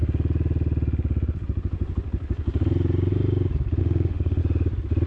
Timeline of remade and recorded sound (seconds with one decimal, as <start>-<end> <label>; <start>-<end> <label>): 0.0-3.8 recorded; 3.8-4.4 remade; 4.4-5.1 recorded